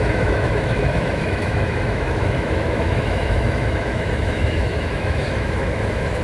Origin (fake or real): fake